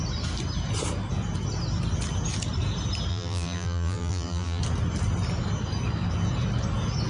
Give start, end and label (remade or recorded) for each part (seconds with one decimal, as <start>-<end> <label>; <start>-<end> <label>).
0.0-3.1 recorded; 3.1-4.6 remade; 4.6-7.1 recorded